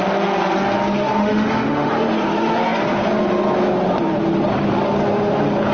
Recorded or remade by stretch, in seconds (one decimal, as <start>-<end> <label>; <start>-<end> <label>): 0.0-1.2 recorded; 1.2-1.9 remade; 1.9-5.7 recorded